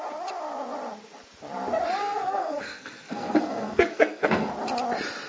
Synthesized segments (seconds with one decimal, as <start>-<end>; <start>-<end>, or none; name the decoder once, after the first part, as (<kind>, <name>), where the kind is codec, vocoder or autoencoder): 2.0-4.5 (codec, SNAC)